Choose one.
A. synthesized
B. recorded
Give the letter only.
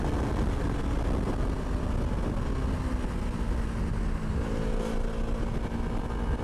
B